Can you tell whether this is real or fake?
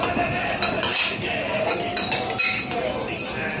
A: real